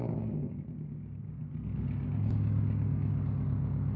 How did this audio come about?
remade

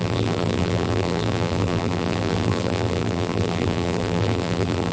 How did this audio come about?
remade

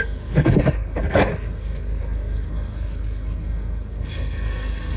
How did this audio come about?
remade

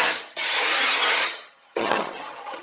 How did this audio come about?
remade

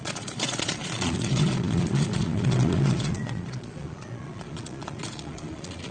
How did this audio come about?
remade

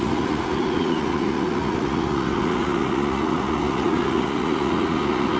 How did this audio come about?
remade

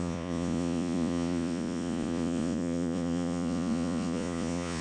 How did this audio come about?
remade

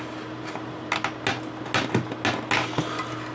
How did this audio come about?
recorded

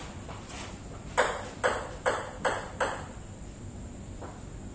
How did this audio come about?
recorded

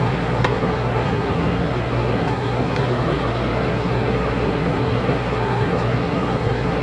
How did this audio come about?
remade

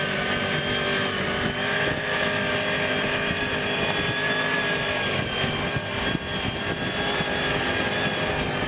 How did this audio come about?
recorded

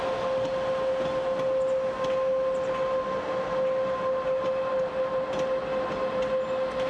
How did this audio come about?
recorded